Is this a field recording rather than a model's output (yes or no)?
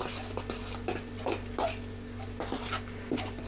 yes